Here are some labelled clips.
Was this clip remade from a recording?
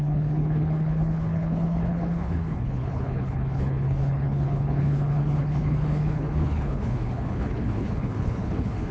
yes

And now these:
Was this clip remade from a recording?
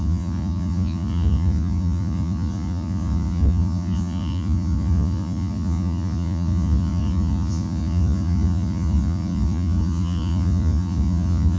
yes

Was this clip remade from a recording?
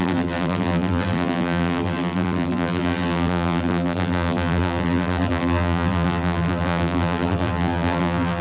yes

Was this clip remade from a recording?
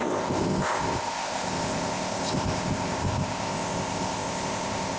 yes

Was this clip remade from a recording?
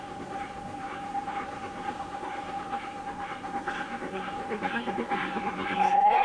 yes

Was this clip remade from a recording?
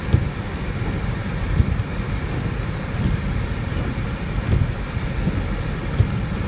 no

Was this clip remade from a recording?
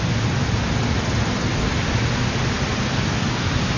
no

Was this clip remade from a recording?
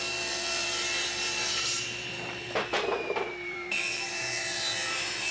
yes